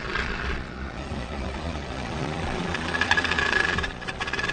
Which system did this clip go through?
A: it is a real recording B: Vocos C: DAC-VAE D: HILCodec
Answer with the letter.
B